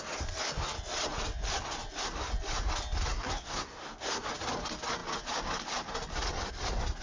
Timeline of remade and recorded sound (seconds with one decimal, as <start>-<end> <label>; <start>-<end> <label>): 0.0-3.1 recorded; 3.1-4.3 remade; 4.3-7.0 recorded